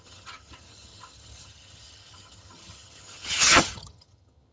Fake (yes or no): yes